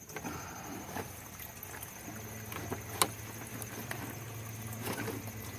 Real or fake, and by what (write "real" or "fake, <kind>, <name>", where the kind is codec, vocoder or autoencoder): real